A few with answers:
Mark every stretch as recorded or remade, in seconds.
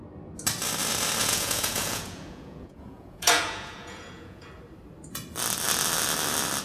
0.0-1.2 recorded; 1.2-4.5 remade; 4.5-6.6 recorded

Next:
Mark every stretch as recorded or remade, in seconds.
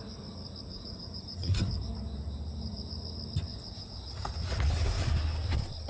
0.0-0.7 recorded; 0.7-1.6 remade; 1.6-3.5 recorded; 3.5-4.7 remade; 4.7-5.9 recorded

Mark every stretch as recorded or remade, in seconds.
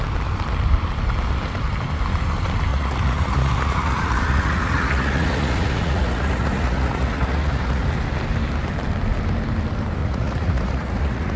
0.0-2.7 recorded; 2.7-7.8 remade; 7.8-10.0 recorded; 10.0-11.4 remade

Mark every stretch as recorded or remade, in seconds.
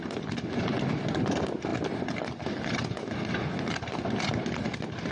0.0-5.1 recorded